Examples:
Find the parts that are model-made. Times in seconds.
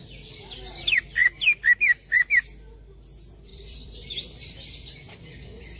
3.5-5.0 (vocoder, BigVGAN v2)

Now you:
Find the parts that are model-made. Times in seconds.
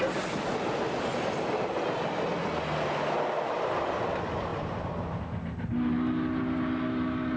4.5-5.2 (vocoder, BigVGAN v2)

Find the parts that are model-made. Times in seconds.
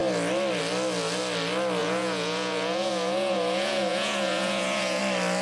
1.8-5.0 (vocoder, Vocos)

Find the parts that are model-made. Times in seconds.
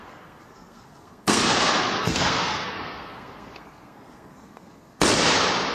0.0-1.4 (codec, SNAC); 2.0-5.0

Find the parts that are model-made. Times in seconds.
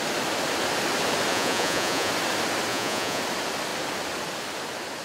1.3-2.1 (vocoder, Vocos); 2.7-3.2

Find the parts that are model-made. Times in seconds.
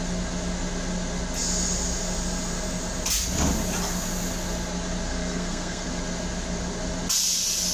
5.1-5.9 (codec, SNAC)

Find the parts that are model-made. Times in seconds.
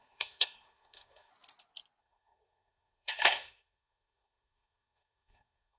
0.0-1.3 (codec, SNAC); 2.0-5.8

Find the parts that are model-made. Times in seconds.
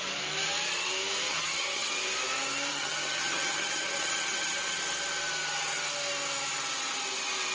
1.3-1.9 (vocoder, HiFi-GAN); 2.7-4.8